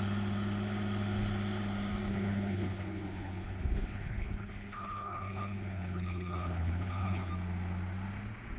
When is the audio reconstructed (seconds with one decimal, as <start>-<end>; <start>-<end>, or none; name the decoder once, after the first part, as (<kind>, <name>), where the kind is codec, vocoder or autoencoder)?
2.1-7.3 (codec, HILCodec)